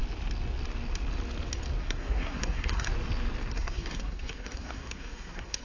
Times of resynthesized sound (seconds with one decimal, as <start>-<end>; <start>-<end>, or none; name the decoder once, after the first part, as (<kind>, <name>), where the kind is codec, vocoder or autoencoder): 1.8-2.9 (codec, SNAC); 3.5-5.6